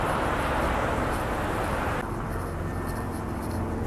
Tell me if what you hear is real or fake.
real